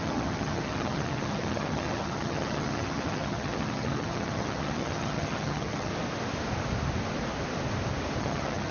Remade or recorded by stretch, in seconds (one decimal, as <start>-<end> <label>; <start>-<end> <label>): 0.0-5.9 remade; 5.9-8.2 recorded; 8.2-8.7 remade